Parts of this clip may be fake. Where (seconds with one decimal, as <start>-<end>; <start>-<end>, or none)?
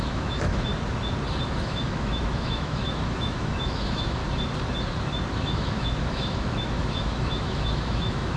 0.0-0.7; 1.4-4.2; 5.4-8.4